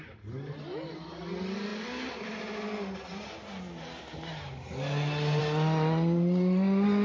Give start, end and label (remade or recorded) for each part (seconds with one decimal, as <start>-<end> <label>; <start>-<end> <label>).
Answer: 0.0-7.0 recorded